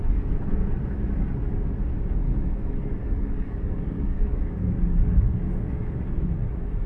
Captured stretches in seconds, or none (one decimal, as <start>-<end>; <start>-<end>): 0.0-2.2; 6.3-6.9